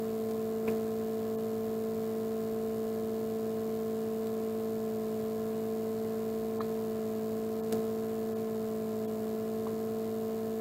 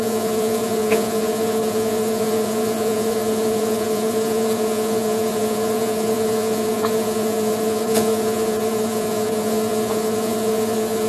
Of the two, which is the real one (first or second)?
first